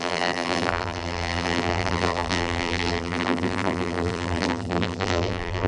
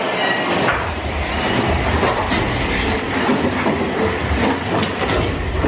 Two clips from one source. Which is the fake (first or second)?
first